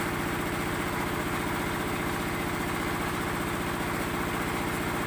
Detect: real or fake real